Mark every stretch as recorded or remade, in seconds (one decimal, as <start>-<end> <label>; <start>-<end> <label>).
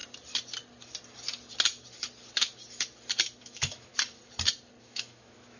0.0-3.4 recorded; 3.4-3.9 remade; 3.9-4.8 recorded; 4.8-5.6 remade